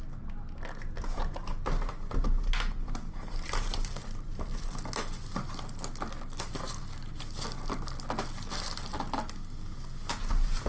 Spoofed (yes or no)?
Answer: no